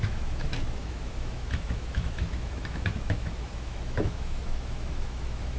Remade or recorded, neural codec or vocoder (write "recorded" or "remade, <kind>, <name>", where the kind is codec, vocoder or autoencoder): remade, autoencoder, DAC-VAE